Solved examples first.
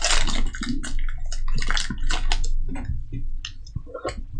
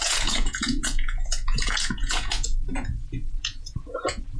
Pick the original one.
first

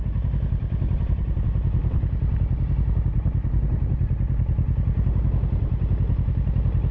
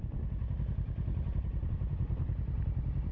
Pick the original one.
first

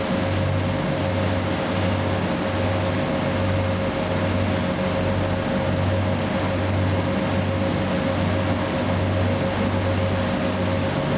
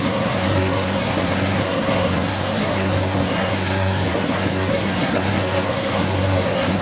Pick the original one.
first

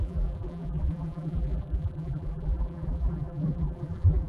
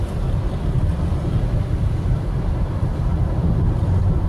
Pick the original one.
second